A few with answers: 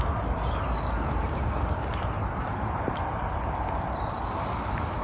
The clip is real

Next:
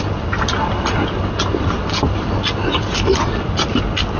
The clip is real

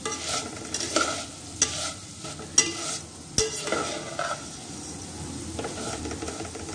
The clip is real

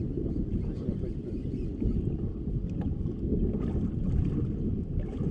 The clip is real